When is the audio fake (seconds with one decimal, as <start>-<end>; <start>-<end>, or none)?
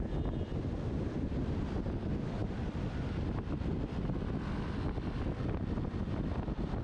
none